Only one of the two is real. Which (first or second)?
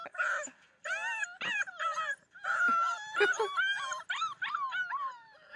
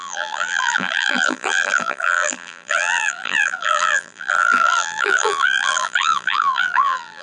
first